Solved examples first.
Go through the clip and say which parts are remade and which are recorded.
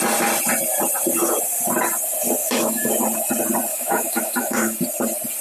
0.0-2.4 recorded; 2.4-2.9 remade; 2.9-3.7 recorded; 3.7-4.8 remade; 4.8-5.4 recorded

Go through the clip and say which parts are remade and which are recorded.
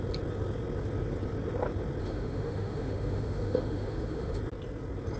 0.0-2.0 recorded; 2.0-4.4 remade; 4.4-5.2 recorded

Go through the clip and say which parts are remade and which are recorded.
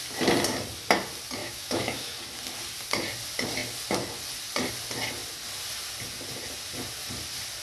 0.0-1.4 recorded; 1.4-2.2 remade; 2.2-7.6 recorded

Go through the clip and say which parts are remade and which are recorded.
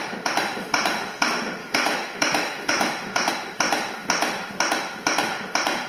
0.0-1.6 recorded; 1.6-3.3 remade; 3.3-5.9 recorded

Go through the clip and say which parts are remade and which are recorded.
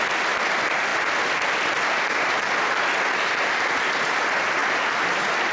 0.0-5.5 recorded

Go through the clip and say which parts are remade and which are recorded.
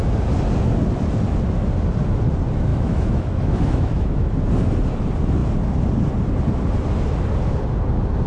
0.0-2.7 recorded; 2.7-4.3 remade; 4.3-8.3 recorded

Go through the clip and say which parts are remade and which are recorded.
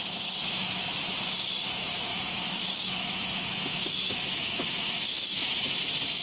0.0-0.6 recorded; 0.6-1.1 remade; 1.1-2.1 recorded; 2.1-5.8 remade; 5.8-6.2 recorded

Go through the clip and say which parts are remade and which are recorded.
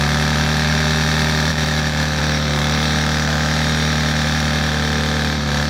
0.0-1.5 recorded; 1.5-2.2 remade; 2.2-5.7 recorded